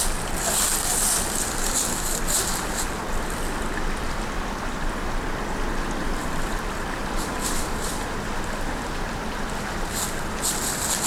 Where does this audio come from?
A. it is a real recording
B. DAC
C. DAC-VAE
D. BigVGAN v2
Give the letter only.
A